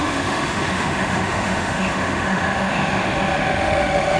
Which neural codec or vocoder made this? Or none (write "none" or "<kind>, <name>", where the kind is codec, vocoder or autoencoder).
autoencoder, DAC-VAE